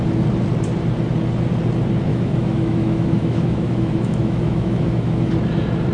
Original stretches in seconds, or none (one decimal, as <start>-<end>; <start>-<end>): 0.0-2.1; 5.3-5.9

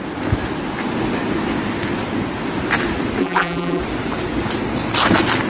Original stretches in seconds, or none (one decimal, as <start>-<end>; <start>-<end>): 0.0-3.2; 3.8-5.5